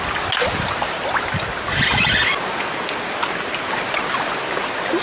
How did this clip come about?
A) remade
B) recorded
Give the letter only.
B